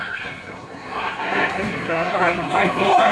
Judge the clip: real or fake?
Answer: fake